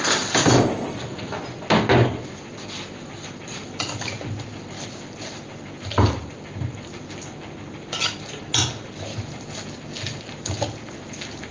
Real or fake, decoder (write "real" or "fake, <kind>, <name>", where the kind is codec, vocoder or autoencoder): real